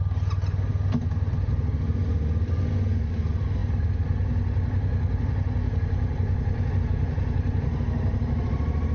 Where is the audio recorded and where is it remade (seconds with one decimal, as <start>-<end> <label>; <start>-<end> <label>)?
0.0-8.9 recorded